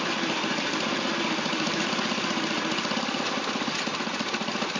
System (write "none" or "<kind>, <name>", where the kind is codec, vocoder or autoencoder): none